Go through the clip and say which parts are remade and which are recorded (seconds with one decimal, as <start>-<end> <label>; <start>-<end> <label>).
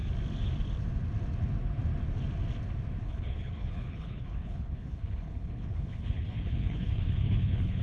0.0-3.0 recorded; 3.0-7.8 remade